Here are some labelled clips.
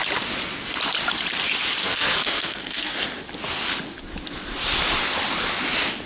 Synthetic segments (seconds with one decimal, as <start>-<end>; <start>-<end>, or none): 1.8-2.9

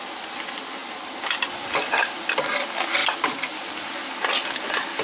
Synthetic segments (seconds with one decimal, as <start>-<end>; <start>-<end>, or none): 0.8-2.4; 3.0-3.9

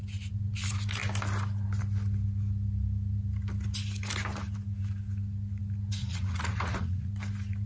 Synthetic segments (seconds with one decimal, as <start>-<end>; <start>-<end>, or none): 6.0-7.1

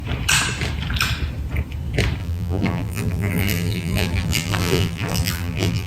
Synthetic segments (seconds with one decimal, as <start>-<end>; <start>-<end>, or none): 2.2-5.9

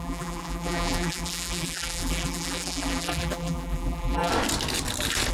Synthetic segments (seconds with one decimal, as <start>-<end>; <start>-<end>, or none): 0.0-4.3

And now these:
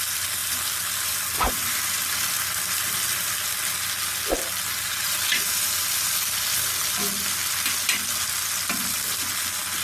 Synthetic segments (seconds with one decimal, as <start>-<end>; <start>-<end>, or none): 0.4-3.3

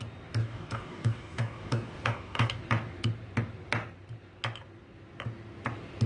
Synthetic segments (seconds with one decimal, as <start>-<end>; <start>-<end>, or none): 0.4-2.6

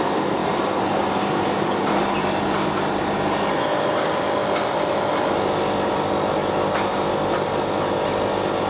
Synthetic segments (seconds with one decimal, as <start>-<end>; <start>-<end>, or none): none